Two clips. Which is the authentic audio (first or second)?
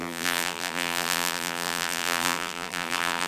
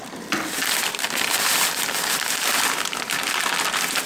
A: second